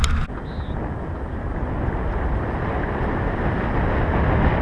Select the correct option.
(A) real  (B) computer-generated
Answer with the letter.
A